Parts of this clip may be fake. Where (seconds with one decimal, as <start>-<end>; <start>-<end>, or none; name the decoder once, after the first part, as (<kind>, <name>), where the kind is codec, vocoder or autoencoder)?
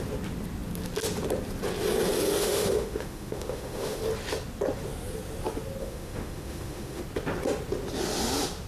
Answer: 2.4-4.0 (autoencoder, DAC-VAE); 5.8-7.0